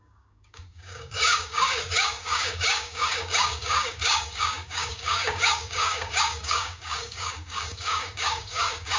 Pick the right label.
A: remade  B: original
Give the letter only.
A